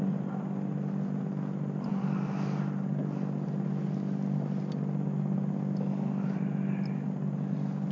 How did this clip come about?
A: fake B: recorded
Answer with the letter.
B